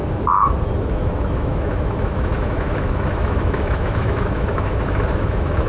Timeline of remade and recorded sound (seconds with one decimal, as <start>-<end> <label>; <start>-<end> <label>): 0.0-0.8 recorded; 0.8-5.7 remade